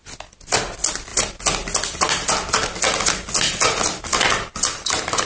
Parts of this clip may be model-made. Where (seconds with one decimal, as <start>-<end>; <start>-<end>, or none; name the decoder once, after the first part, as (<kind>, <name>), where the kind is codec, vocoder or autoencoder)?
none